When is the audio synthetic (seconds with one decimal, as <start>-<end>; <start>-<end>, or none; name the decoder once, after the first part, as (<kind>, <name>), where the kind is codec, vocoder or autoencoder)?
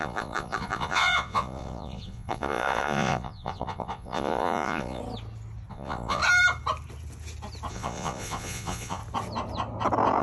0.0-5.0 (vocoder, Vocos); 5.7-6.2; 7.7-9.0